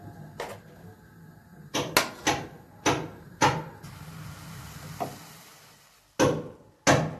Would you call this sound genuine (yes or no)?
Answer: yes